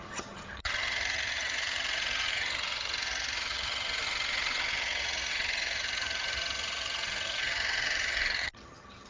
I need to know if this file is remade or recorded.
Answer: remade